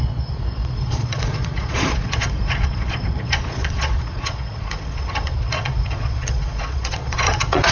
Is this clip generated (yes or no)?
yes